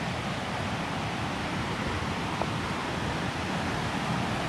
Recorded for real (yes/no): yes